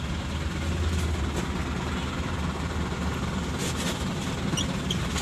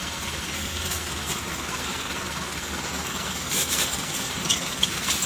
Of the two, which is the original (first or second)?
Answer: first